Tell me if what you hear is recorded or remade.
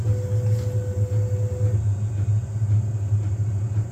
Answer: recorded